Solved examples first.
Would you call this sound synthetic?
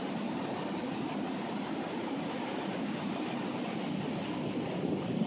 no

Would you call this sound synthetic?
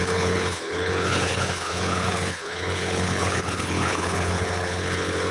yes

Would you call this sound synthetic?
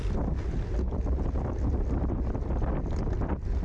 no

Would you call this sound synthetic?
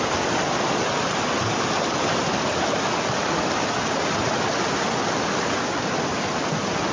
no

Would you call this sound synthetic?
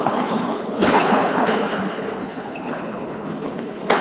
yes